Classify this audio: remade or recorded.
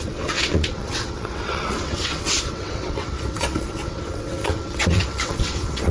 remade